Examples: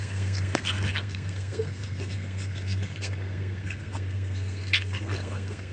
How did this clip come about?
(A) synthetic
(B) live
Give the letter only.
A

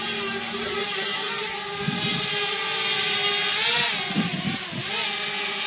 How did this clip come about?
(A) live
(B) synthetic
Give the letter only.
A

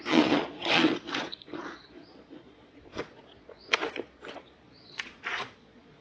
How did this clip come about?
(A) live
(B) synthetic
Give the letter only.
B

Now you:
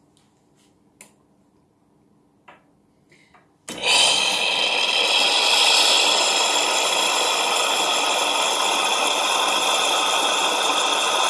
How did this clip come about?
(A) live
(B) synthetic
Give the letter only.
A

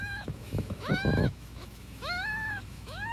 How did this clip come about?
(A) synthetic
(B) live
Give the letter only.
A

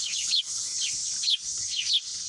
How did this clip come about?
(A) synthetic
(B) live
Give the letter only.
A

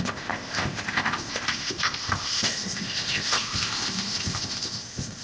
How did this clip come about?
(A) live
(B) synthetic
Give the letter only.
B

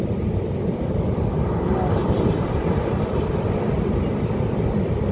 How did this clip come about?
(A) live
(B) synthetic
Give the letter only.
A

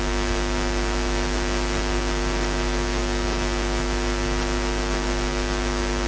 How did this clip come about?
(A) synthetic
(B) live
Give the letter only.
B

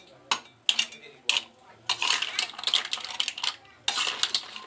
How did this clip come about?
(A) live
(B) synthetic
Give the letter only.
A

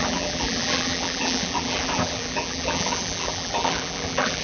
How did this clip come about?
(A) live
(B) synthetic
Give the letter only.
B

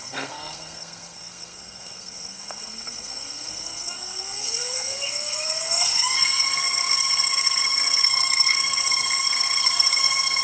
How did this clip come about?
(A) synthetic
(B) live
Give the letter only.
A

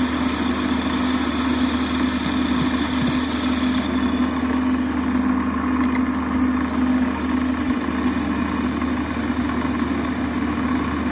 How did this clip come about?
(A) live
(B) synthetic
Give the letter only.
A